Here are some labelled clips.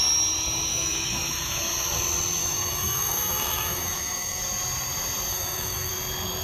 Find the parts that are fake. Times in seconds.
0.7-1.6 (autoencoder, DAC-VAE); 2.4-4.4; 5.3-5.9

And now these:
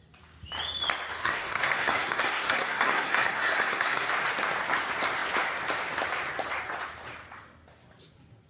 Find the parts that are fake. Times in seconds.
1.2-4.1 (codec, SNAC)